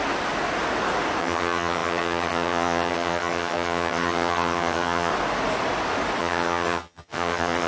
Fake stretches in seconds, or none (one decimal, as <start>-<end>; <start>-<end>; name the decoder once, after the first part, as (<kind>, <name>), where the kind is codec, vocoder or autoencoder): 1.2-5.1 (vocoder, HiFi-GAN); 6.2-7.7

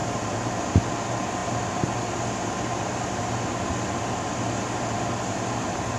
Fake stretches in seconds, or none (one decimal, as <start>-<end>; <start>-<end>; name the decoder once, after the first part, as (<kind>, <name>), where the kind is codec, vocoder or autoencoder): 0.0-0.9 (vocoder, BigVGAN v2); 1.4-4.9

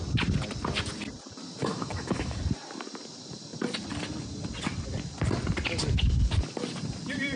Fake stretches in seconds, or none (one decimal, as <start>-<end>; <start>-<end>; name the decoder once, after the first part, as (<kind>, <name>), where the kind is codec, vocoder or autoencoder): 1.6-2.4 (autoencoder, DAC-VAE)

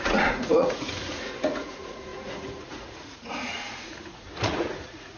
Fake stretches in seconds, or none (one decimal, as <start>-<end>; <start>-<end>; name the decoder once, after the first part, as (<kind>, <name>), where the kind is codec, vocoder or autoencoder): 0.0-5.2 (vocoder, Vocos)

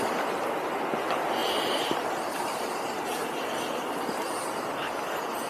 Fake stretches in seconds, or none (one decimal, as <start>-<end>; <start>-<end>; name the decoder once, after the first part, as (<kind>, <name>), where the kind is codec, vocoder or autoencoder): 1.4-4.7 (vocoder, BigVGAN v2)

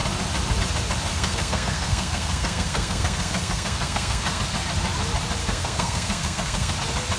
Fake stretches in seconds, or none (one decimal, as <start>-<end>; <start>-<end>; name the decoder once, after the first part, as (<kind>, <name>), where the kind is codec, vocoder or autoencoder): 1.1-4.4 (codec, SNAC); 5.4-6.7

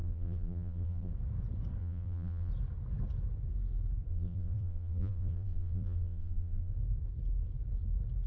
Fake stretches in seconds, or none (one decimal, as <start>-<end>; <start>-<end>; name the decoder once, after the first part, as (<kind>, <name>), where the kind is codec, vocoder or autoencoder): 0.0-1.1 (vocoder, BigVGAN v2); 1.8-2.5; 4.1-6.7

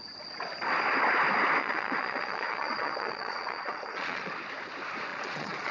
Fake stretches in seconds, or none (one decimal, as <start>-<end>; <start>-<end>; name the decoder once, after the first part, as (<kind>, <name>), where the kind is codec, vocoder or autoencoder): 1.6-4.3 (vocoder, Vocos); 5.1-5.7